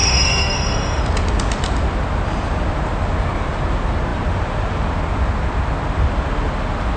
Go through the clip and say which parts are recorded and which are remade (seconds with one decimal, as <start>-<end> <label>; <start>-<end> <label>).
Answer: 0.0-1.0 remade; 1.0-7.0 recorded